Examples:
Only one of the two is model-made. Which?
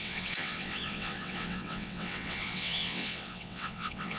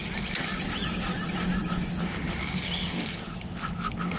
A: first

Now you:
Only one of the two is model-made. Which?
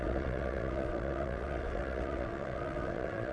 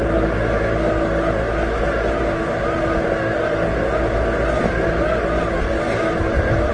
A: first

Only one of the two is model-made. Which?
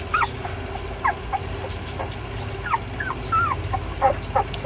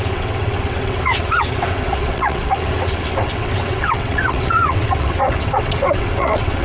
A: second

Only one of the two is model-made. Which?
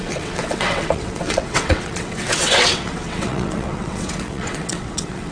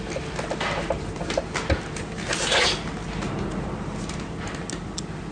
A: first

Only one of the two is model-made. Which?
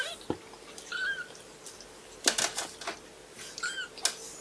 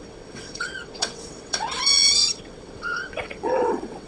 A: second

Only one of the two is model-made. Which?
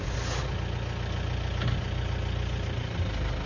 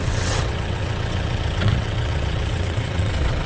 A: second